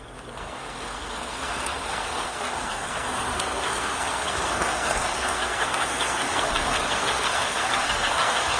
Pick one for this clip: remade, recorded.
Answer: remade